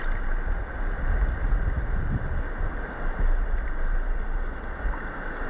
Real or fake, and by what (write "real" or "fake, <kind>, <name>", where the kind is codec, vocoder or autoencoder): real